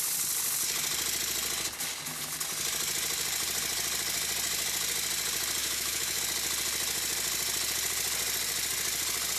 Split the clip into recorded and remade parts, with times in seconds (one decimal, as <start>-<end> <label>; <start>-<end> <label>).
0.0-5.6 recorded; 5.6-6.2 remade; 6.2-9.4 recorded